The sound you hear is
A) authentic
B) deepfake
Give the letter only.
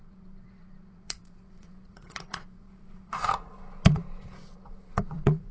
B